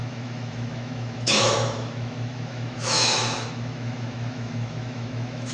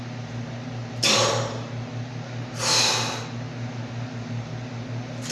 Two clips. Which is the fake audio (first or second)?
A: first